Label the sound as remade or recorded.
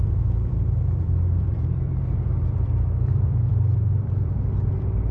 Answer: remade